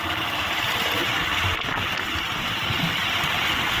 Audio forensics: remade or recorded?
recorded